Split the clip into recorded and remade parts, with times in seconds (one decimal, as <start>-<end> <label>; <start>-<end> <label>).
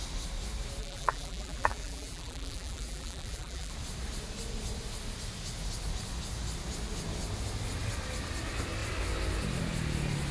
0.0-0.8 recorded; 0.8-3.7 remade; 3.7-10.3 recorded